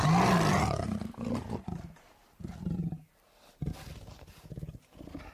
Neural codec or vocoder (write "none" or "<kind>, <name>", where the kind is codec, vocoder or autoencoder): none